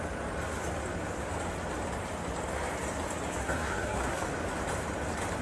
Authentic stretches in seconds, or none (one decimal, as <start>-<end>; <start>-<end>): 0.0-3.4; 4.2-5.4